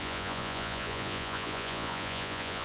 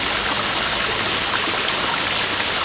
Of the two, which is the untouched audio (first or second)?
second